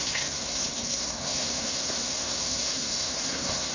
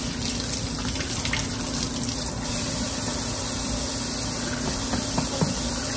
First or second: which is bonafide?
second